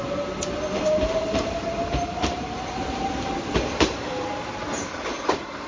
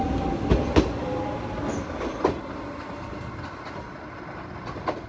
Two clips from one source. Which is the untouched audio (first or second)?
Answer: second